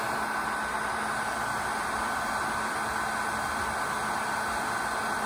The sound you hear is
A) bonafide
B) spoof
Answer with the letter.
A